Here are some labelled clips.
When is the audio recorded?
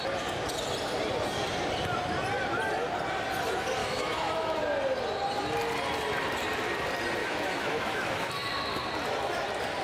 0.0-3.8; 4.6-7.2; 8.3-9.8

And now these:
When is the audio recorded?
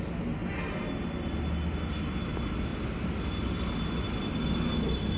0.0-5.2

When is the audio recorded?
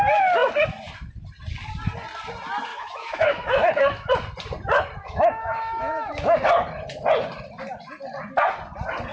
0.0-2.7; 4.1-5.0; 6.4-9.1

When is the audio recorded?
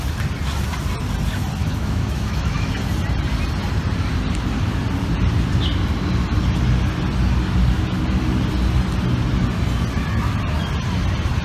0.0-1.6; 2.7-11.4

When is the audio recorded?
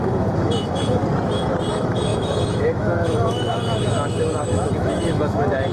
1.0-1.7